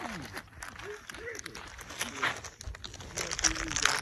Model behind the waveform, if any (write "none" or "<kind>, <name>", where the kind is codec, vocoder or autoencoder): none